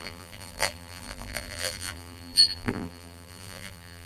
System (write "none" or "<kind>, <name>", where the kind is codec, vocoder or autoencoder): vocoder, BigVGAN v2